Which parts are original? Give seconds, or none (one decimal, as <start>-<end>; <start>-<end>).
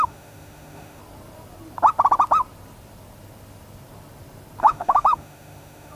1.0-4.6